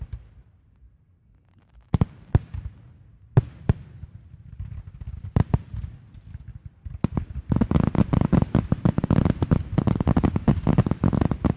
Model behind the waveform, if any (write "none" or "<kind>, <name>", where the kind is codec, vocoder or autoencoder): none